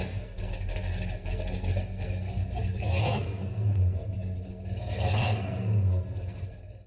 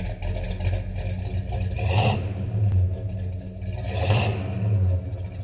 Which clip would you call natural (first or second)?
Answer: second